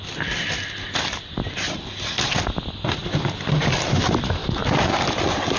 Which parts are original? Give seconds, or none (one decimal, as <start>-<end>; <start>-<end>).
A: 0.0-5.6